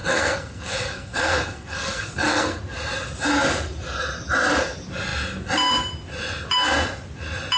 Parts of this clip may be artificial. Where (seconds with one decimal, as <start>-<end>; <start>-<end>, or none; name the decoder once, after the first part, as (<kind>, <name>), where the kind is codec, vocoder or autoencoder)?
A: 0.0-2.6 (codec, SNAC)